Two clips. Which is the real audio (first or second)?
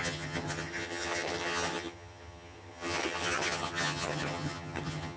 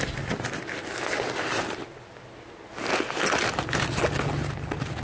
second